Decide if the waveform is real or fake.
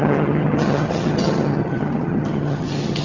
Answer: fake